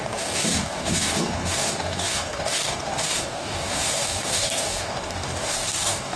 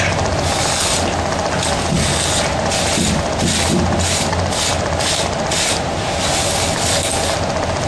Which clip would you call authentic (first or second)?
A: second